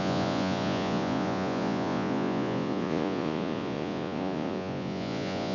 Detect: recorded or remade remade